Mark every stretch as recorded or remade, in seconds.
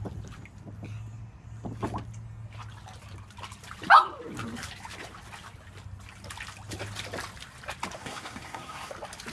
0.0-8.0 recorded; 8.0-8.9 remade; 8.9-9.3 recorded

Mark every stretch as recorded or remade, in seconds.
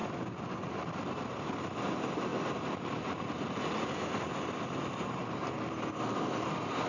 0.0-6.9 remade